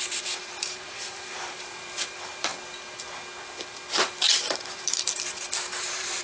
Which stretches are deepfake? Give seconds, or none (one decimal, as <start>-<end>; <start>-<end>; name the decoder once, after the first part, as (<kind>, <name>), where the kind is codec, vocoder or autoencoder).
0.0-2.5 (vocoder, BigVGAN v2); 5.8-6.2